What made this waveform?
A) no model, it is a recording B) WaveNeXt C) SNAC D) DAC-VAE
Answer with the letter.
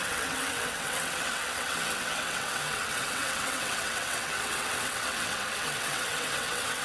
B